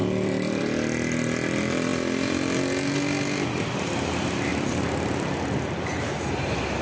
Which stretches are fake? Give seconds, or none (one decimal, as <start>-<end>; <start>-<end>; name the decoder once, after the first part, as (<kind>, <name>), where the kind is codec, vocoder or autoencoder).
0.0-0.6 (vocoder, BigVGAN v2); 4.5-5.8